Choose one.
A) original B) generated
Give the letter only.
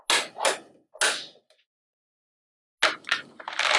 A